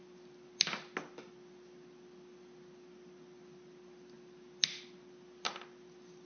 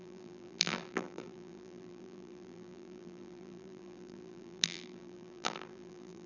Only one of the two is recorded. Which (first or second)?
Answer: first